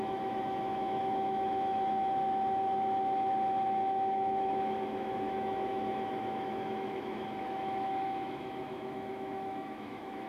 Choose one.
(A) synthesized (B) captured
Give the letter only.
A